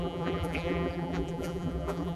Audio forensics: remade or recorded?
remade